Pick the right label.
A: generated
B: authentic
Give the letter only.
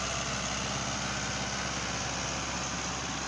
B